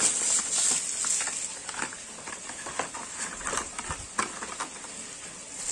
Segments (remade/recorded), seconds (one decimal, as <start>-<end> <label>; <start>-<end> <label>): 0.0-5.7 recorded